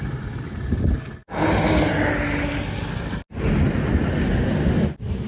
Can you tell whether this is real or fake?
real